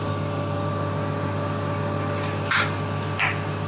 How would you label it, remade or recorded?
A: recorded